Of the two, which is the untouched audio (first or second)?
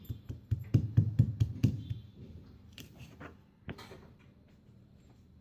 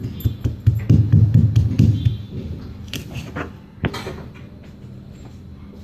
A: second